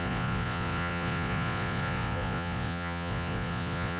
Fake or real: fake